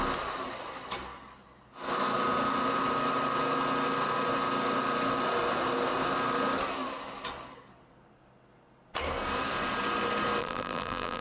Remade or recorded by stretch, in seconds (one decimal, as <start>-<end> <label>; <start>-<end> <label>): 0.0-10.4 recorded; 10.4-11.2 remade